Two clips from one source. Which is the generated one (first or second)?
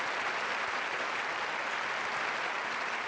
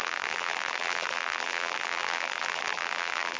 second